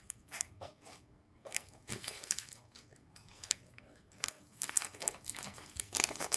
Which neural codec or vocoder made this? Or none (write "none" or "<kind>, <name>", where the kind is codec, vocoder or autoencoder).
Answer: codec, SNAC